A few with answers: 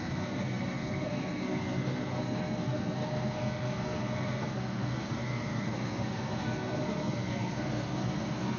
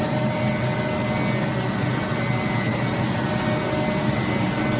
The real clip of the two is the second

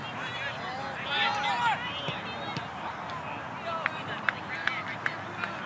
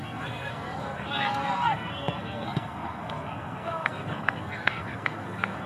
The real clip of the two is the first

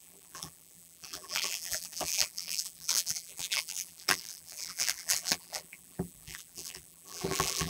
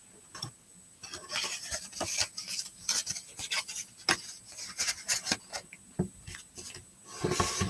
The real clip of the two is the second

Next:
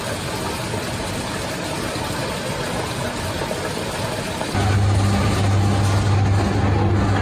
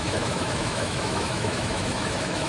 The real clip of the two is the first